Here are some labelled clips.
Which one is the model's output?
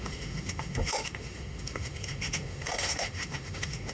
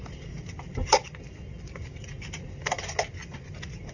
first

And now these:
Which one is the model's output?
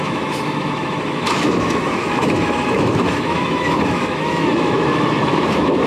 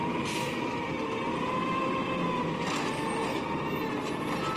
first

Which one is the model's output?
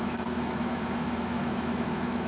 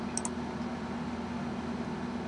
first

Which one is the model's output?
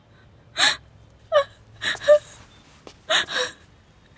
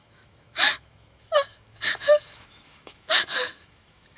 second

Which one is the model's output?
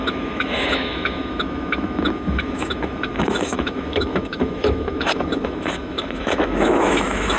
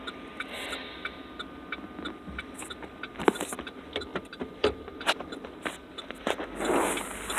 first